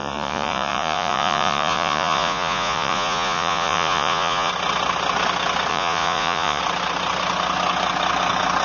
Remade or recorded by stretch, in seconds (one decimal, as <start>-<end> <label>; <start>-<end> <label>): 0.0-4.5 remade; 4.5-5.7 recorded; 5.7-6.6 remade; 6.6-8.6 recorded